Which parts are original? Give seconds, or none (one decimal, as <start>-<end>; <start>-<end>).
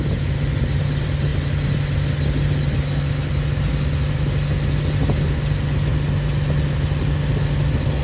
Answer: 0.0-8.0